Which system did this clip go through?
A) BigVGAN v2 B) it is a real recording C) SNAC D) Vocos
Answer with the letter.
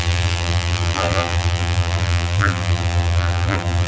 A